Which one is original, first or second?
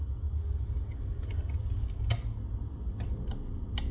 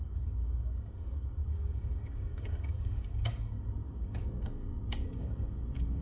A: first